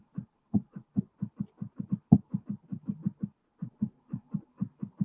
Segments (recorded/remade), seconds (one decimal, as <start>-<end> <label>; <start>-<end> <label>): 0.0-0.9 remade; 0.9-3.4 recorded; 3.4-4.5 remade; 4.5-5.0 recorded